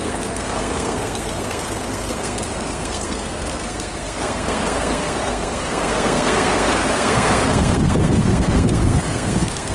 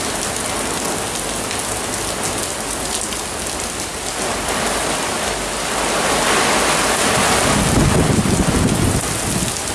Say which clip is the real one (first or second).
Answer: second